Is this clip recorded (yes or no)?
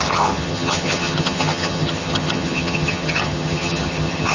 no